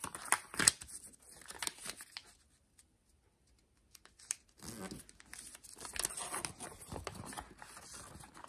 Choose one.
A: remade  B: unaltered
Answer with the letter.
B